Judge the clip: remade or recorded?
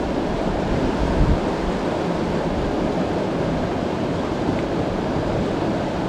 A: recorded